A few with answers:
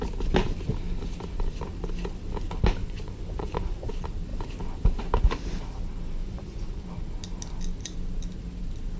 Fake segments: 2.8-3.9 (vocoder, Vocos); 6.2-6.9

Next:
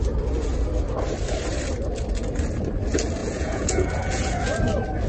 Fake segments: 3.2-4.6 (vocoder, Vocos)

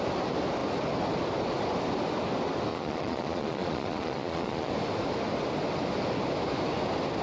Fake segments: 2.7-4.7 (vocoder, Vocos)

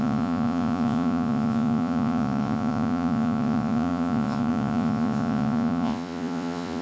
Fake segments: 0.0-6.8 (vocoder, Vocos)

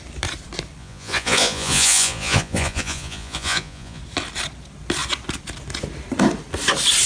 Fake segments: 0.8-4.0 (vocoder, Vocos)

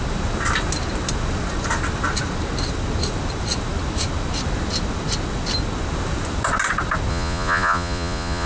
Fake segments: 7.1-8.5 (vocoder, Vocos)